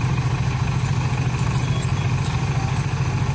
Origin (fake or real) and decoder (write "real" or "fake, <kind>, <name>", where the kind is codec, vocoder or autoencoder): real